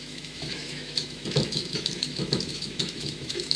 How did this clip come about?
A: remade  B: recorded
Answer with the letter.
A